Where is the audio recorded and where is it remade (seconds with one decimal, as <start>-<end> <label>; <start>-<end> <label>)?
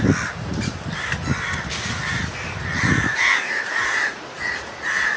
0.0-2.7 recorded; 2.7-5.2 remade